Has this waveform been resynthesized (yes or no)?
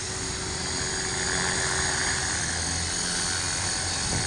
no